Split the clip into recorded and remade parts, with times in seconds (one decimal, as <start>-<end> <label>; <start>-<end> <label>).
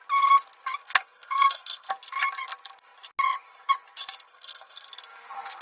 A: 0.0-0.8 recorded; 0.8-1.9 remade; 1.9-4.3 recorded; 4.3-4.9 remade; 4.9-5.6 recorded